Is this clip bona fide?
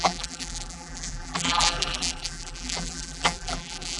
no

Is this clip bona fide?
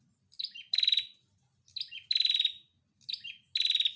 yes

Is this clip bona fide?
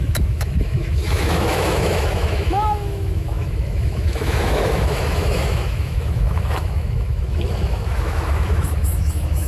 no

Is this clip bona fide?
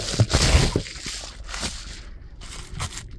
yes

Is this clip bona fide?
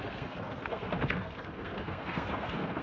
no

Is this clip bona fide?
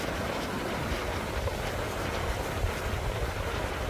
yes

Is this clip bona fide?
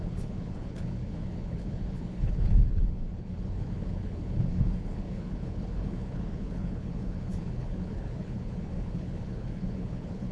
no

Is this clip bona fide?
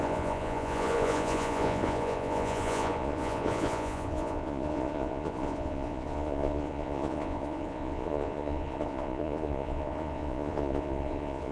no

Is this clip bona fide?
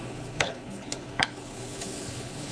no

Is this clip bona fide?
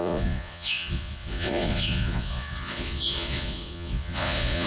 no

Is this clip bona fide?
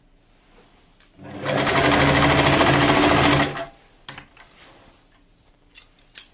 yes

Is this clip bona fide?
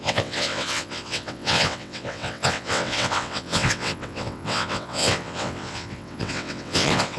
no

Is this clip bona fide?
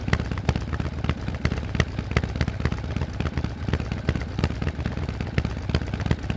yes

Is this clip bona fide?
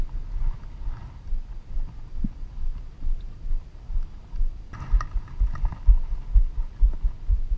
yes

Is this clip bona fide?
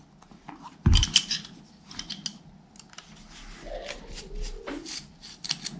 yes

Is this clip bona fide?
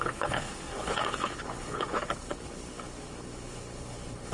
no